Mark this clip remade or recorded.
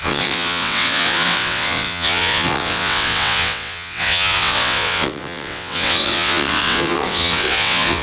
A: remade